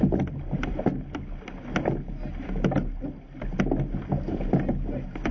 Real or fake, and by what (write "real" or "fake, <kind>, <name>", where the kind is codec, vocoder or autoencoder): real